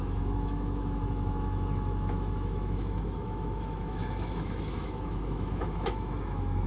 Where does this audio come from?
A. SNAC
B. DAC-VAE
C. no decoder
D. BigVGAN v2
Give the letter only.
B